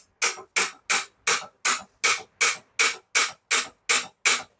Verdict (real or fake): real